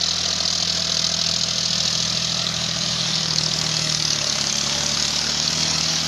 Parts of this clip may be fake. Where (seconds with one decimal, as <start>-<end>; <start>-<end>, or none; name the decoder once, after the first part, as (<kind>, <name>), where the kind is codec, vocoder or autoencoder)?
2.4-6.1 (codec, DAC)